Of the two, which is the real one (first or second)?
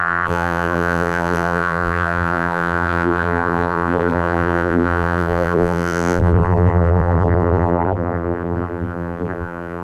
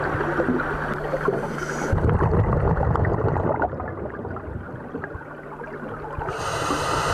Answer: second